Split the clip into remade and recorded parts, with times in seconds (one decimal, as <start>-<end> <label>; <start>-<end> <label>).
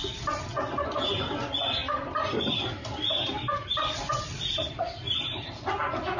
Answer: 0.0-1.8 recorded; 1.8-5.5 remade; 5.5-6.2 recorded